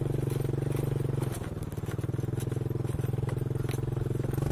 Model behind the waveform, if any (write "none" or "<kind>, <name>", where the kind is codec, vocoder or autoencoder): none